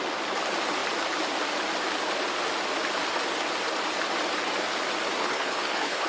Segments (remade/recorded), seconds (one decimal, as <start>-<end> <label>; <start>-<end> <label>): 0.0-5.2 recorded; 5.2-6.1 remade